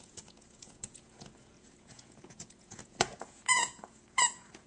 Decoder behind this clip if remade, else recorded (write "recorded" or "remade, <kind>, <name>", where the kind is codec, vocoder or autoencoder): remade, vocoder, Vocos